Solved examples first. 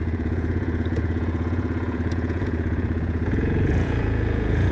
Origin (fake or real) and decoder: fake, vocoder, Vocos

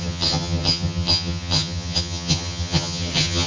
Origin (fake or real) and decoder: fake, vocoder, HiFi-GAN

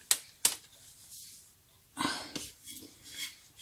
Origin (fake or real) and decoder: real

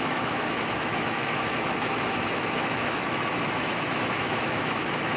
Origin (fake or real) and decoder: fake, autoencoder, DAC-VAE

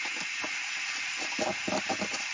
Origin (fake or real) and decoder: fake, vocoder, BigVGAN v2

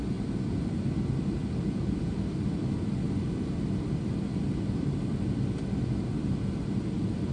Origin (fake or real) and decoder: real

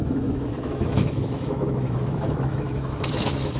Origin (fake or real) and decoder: fake, autoencoder, DAC-VAE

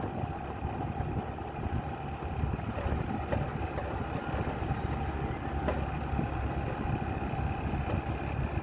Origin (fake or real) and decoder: real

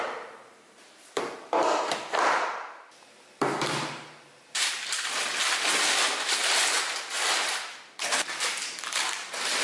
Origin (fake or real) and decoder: fake, vocoder, BigVGAN v2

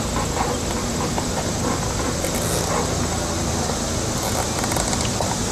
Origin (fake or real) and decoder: real